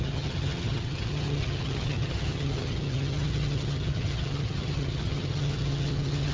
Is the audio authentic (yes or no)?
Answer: no